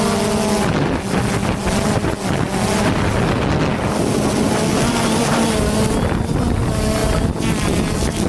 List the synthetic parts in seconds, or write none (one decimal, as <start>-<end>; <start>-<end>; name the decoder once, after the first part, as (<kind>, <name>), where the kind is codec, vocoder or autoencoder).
none